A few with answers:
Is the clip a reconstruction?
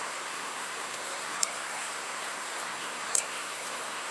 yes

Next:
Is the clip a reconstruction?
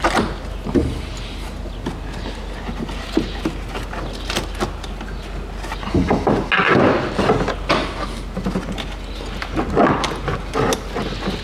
no